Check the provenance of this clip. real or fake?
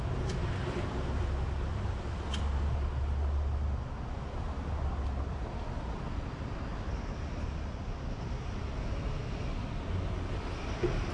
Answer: real